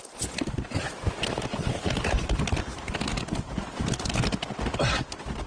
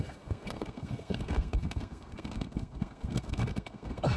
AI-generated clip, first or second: second